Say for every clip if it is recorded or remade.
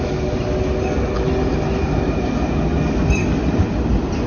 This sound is recorded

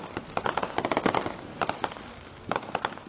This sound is recorded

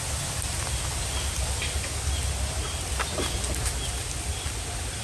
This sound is recorded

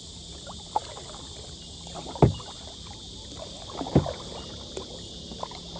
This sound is recorded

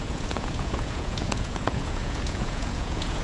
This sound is remade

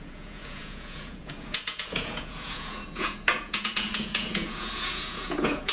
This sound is remade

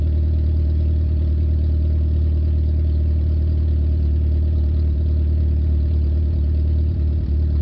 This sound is remade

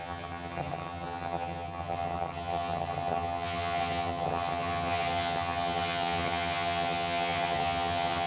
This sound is remade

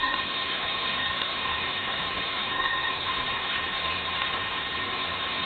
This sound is remade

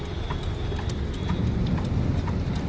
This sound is recorded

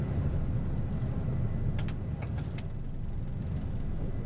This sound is recorded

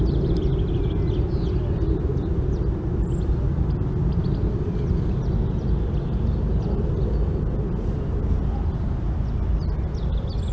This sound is recorded